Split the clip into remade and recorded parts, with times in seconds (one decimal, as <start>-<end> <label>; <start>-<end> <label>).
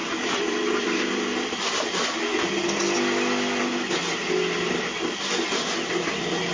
0.0-1.6 remade; 1.6-6.5 recorded